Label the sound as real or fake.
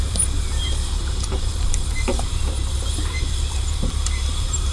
fake